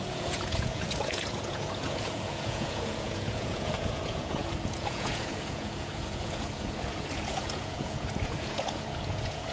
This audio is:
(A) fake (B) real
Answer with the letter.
A